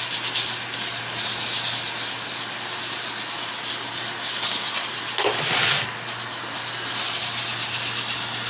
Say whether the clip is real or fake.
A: real